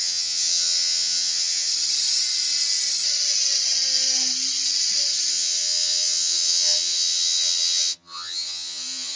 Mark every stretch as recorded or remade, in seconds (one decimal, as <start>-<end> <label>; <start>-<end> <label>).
0.0-1.7 remade; 1.7-5.3 recorded; 5.3-9.2 remade